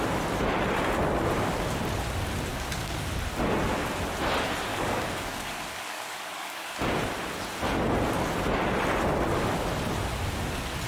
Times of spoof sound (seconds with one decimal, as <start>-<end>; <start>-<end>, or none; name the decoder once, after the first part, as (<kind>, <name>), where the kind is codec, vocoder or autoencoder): 2.5-3.1 (codec, DAC); 4.7-6.9